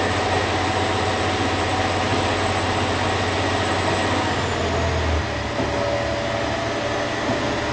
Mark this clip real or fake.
real